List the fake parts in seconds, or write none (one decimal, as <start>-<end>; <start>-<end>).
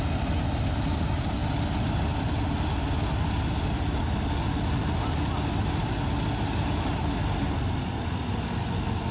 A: none